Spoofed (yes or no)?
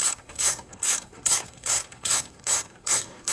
yes